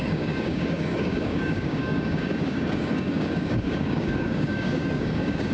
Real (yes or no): no